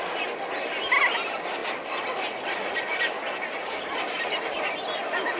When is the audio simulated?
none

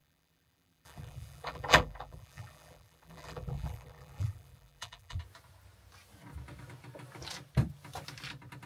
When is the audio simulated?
0.0-5.2

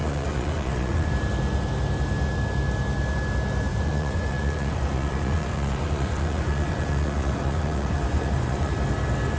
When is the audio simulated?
0.0-1.1; 3.7-8.7

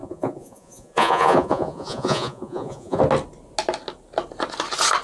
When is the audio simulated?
0.0-3.0

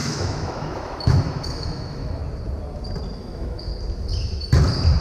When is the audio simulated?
0.0-2.2; 3.2-3.7

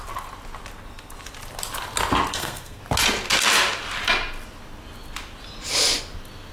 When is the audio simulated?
2.3-2.8